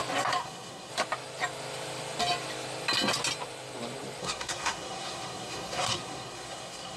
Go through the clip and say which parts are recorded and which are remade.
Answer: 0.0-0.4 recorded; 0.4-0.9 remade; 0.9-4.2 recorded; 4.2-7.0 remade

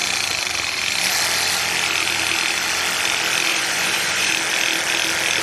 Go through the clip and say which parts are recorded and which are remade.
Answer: 0.0-3.5 recorded; 3.5-4.3 remade; 4.3-5.4 recorded

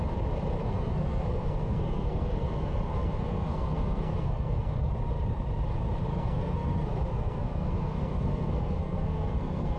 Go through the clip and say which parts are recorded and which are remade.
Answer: 0.0-0.6 recorded; 0.6-4.9 remade; 4.9-6.1 recorded; 6.1-9.8 remade

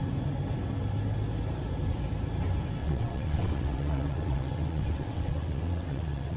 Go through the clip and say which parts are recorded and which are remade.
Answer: 0.0-2.8 recorded; 2.8-6.4 remade

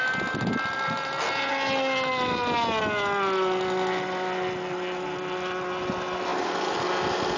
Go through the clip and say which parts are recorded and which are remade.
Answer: 0.0-7.4 recorded